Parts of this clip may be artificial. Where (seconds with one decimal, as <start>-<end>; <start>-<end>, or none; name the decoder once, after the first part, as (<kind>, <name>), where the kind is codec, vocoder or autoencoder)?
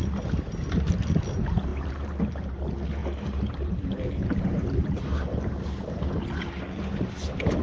1.7-2.5 (vocoder, BigVGAN v2); 3.0-6.6